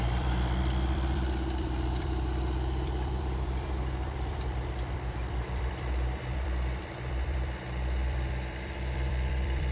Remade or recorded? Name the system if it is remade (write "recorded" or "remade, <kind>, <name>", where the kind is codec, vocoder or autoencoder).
remade, vocoder, BigVGAN v2